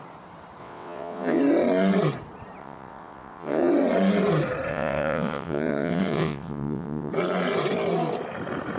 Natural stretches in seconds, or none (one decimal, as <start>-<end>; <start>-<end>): 0.0-0.6; 1.4-2.6; 3.7-4.7; 7.1-8.8